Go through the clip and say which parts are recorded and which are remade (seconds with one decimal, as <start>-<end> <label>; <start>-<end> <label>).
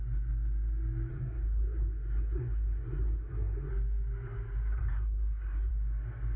0.0-1.1 recorded; 1.1-3.7 remade; 3.7-4.8 recorded; 4.8-5.7 remade; 5.7-6.4 recorded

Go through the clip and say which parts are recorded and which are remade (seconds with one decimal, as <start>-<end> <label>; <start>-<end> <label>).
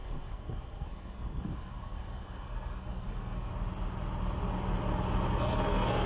0.0-3.5 remade; 3.5-5.4 recorded; 5.4-6.1 remade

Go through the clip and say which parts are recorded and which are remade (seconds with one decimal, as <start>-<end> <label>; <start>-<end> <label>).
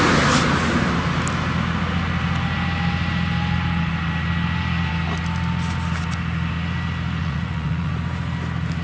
0.0-7.2 recorded; 7.2-7.9 remade; 7.9-8.8 recorded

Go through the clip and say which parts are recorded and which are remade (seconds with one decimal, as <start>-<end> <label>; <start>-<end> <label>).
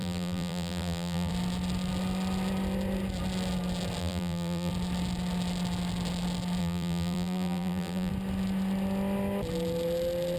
0.0-1.3 remade; 1.3-4.0 recorded; 4.0-4.7 remade; 4.7-6.6 recorded; 6.6-8.1 remade; 8.1-10.4 recorded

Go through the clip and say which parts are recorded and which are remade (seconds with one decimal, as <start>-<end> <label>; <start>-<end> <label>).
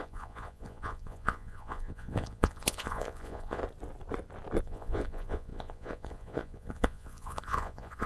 0.0-3.6 remade; 3.6-4.6 recorded; 4.6-8.1 remade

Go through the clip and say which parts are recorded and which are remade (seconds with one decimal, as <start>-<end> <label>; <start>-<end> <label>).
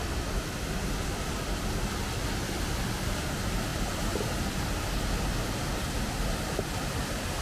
0.0-3.7 recorded; 3.7-4.7 remade; 4.7-7.4 recorded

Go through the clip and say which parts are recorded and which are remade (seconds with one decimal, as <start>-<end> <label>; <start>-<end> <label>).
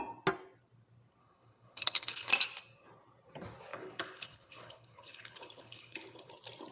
0.0-1.2 recorded; 1.2-2.3 remade; 2.3-3.7 recorded; 3.7-6.3 remade; 6.3-6.7 recorded